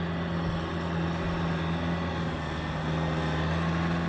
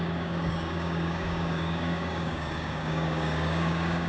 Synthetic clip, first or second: second